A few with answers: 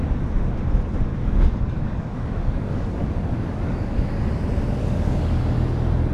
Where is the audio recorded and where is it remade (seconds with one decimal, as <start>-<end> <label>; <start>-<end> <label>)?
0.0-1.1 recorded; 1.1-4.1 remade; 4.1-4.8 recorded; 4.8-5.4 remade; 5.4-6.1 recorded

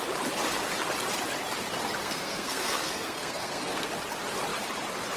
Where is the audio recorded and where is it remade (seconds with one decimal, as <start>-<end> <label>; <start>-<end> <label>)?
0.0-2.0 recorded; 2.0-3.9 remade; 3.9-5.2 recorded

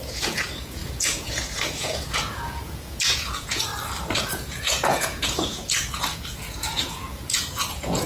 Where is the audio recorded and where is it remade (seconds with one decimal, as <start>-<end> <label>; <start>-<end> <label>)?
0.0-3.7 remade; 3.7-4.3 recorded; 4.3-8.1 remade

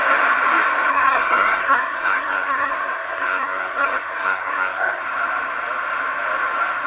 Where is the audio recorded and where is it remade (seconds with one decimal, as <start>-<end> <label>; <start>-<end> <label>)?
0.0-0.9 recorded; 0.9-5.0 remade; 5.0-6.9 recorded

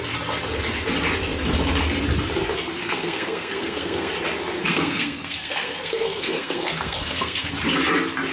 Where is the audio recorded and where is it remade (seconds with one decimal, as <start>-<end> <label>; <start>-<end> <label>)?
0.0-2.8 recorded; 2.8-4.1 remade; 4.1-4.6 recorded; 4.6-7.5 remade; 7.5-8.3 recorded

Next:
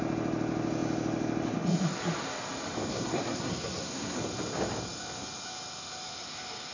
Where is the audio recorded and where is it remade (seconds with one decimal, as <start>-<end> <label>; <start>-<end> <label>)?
0.0-2.9 recorded; 2.9-4.2 remade; 4.2-6.7 recorded